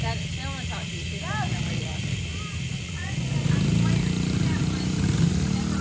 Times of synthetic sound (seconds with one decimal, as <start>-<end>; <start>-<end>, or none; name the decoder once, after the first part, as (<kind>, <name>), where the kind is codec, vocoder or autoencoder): 1.5-2.2 (vocoder, Vocos); 2.7-3.3